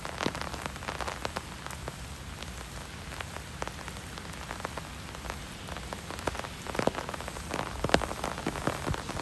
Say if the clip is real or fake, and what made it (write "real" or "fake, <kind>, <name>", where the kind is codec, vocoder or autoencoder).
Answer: real